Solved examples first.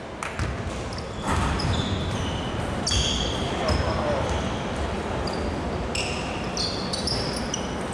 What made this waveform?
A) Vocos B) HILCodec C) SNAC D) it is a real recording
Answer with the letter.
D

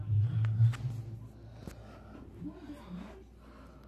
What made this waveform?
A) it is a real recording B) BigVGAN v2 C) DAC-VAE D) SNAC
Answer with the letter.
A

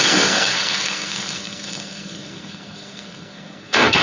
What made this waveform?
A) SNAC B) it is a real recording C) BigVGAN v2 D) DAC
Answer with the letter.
A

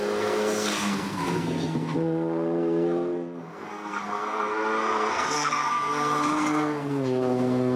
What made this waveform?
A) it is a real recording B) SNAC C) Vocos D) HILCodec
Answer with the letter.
B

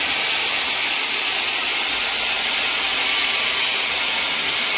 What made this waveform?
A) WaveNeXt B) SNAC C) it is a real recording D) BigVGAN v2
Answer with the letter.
C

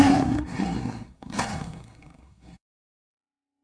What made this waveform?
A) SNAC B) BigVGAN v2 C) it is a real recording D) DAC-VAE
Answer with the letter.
A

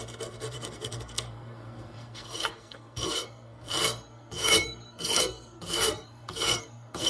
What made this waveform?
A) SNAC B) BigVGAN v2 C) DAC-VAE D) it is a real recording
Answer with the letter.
A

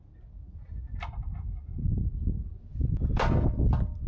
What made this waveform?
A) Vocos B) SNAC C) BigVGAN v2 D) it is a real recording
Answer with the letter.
D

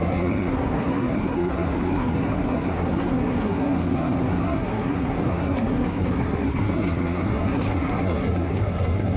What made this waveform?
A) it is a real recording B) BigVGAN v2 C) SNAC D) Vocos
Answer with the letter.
C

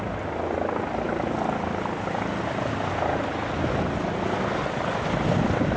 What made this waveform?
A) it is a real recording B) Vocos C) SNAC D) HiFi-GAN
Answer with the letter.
A